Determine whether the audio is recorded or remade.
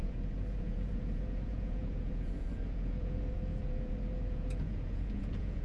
remade